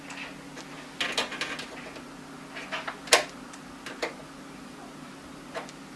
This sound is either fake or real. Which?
real